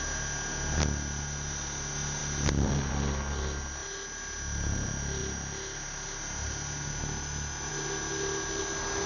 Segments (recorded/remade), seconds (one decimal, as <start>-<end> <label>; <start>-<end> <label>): 0.0-9.1 recorded